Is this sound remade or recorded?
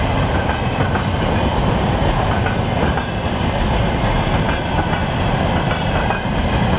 recorded